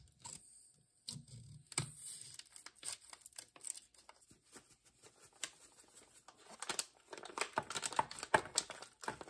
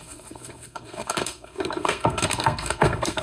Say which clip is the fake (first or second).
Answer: second